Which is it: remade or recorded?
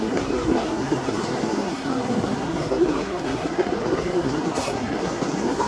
remade